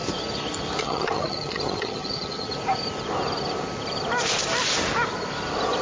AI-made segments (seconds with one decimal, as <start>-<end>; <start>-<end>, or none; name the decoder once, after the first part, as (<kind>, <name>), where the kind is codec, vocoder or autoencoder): 0.8-2.5 (vocoder, HiFi-GAN)